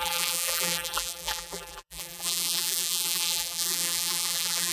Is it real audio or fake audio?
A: fake